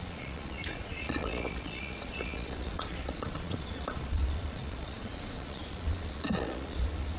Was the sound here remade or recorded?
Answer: remade